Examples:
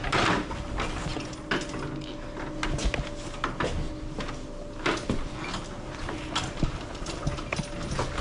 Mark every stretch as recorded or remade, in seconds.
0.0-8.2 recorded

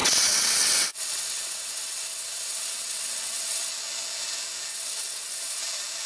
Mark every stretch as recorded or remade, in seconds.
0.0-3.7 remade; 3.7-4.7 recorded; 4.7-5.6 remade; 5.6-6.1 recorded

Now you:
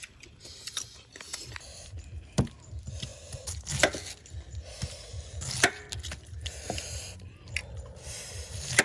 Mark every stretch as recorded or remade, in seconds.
0.0-8.8 recorded